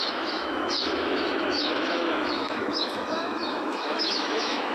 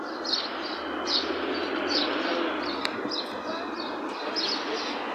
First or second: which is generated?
first